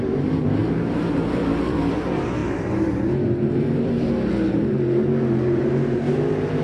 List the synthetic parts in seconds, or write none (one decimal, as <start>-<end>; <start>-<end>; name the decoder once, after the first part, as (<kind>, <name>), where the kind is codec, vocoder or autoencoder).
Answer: 0.0-6.6 (vocoder, BigVGAN v2)